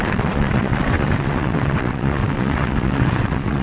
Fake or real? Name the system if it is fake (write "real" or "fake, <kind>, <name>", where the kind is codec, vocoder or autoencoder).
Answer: fake, vocoder, WaveNeXt